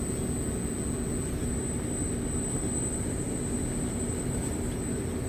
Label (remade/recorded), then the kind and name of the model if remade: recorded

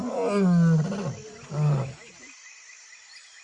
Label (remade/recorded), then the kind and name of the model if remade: recorded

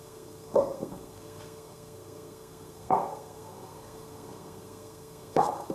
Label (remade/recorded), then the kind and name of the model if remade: remade, codec, SNAC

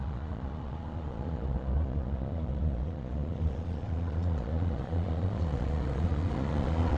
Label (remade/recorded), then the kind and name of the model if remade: remade, vocoder, Vocos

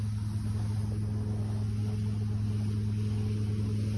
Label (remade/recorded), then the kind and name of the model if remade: recorded